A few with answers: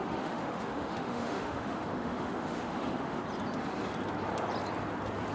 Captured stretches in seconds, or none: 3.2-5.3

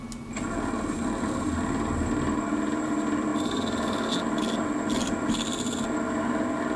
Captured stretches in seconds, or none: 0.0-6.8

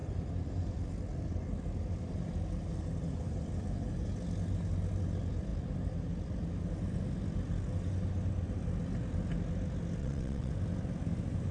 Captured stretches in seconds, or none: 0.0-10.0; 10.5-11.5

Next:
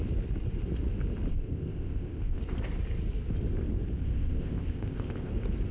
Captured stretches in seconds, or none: 0.0-1.3; 2.4-4.0; 5.3-5.7